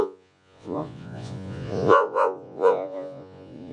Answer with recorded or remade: remade